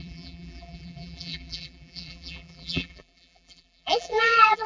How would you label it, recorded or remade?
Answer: remade